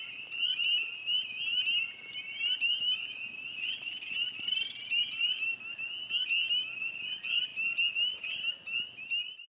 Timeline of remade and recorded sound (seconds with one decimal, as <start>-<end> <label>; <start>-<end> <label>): 0.0-9.5 recorded

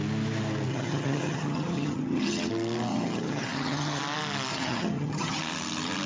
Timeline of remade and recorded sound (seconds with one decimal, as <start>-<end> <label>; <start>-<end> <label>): 0.0-0.7 recorded; 0.7-2.5 remade; 2.5-2.9 recorded; 2.9-4.0 remade; 4.0-4.5 recorded; 4.5-5.4 remade; 5.4-6.1 recorded

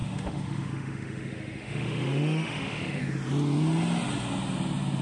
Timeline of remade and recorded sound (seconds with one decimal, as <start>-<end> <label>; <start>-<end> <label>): 0.0-3.0 remade; 3.0-5.0 recorded